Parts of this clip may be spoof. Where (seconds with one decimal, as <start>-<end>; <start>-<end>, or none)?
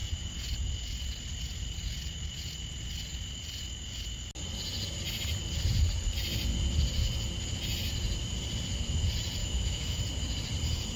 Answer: 9.4-10.0